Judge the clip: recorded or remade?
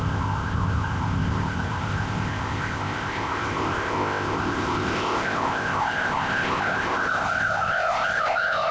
remade